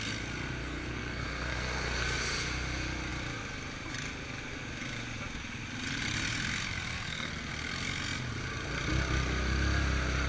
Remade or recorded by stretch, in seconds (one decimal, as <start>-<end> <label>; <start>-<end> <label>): 0.0-0.6 recorded; 0.6-2.2 remade; 2.2-6.9 recorded; 6.9-7.5 remade; 7.5-10.3 recorded